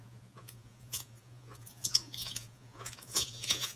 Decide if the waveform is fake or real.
fake